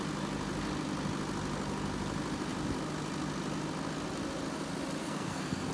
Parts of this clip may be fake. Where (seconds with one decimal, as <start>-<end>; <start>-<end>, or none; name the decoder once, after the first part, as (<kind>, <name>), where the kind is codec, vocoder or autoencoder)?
5.0-5.7 (codec, SNAC)